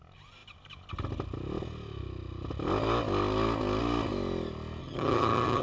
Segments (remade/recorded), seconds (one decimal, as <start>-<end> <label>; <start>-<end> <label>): 0.0-4.8 recorded; 4.8-5.6 remade